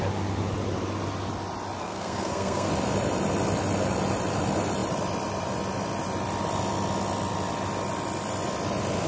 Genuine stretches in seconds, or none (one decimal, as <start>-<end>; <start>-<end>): 0.0-1.8; 2.7-9.1

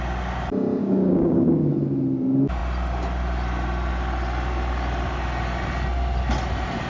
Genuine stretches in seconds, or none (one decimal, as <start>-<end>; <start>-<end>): 0.0-0.8; 1.7-6.9

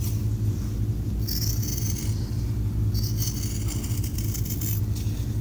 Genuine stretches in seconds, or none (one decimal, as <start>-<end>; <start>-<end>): 0.0-5.4

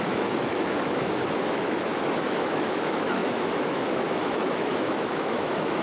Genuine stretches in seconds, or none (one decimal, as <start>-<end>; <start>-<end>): none

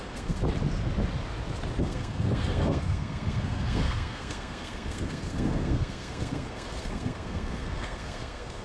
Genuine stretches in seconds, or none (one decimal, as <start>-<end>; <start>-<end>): 0.4-1.8